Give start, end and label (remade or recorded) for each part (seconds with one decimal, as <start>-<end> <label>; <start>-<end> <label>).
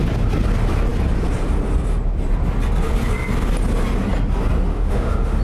0.0-4.7 recorded; 4.7-5.4 remade